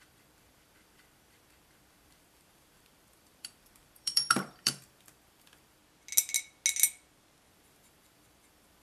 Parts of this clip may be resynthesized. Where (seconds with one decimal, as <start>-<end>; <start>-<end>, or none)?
0.0-5.8; 7.5-8.8